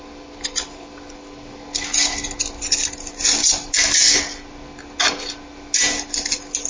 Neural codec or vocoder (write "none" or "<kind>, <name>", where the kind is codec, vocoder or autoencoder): none